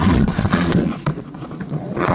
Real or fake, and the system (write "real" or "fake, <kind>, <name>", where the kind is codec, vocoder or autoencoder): fake, vocoder, Vocos